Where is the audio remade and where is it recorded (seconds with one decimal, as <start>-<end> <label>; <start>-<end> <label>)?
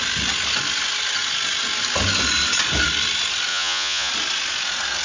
0.0-3.5 recorded; 3.5-4.1 remade; 4.1-5.0 recorded